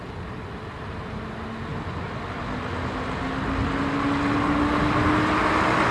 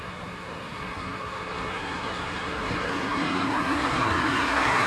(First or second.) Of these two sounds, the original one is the first